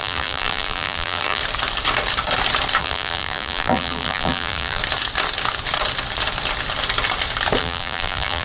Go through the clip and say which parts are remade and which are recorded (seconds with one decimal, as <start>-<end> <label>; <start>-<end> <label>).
0.0-1.4 remade; 1.4-2.8 recorded; 2.8-4.8 remade; 4.8-7.6 recorded; 7.6-8.4 remade